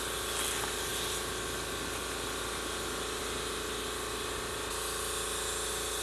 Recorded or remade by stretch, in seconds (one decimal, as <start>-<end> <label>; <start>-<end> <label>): 0.0-6.0 recorded